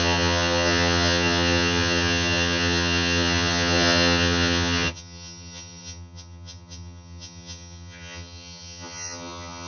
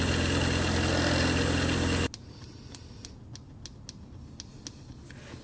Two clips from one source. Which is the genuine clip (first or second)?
second